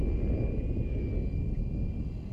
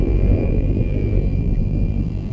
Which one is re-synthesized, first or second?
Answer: second